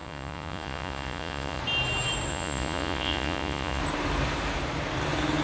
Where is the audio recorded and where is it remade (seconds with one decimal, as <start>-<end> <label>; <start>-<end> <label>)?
0.0-1.6 remade; 1.6-2.3 recorded; 2.3-3.8 remade; 3.8-5.4 recorded